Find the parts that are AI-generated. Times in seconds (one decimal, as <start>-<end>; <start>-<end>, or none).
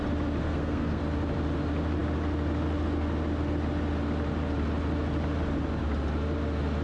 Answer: 0.4-1.0